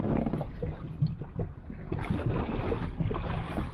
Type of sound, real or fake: real